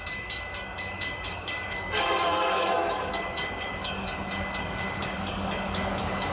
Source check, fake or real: fake